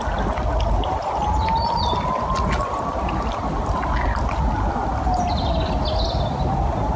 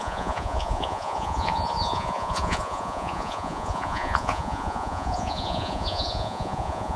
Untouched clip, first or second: first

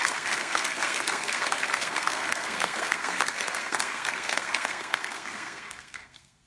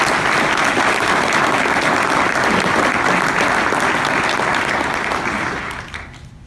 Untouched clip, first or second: second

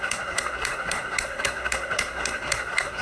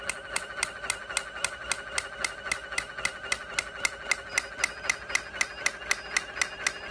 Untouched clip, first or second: second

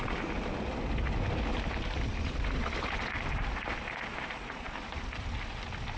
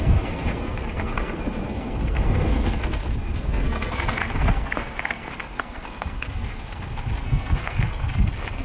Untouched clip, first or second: first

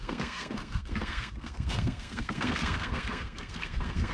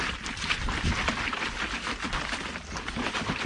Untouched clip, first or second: second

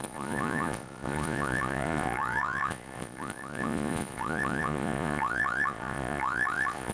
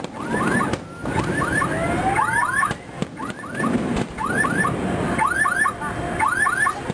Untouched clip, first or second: second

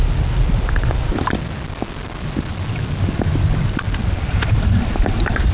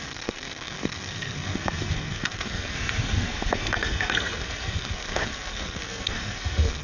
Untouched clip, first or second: first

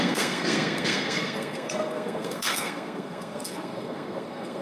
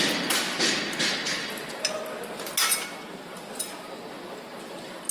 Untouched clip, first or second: second